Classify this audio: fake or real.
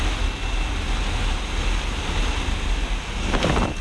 real